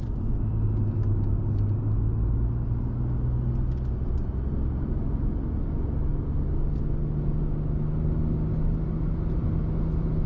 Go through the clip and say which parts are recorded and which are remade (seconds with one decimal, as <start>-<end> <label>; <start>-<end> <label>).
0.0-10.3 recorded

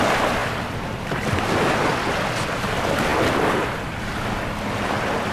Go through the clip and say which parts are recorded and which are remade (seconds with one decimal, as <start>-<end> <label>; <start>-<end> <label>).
0.0-5.3 recorded

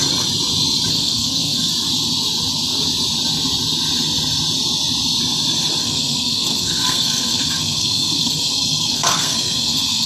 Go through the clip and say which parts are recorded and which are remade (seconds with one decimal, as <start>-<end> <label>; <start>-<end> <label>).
0.0-0.9 recorded; 0.9-1.7 remade; 1.7-5.8 recorded; 5.8-10.1 remade